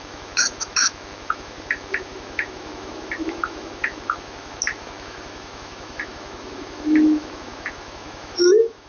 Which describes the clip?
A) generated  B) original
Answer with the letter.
A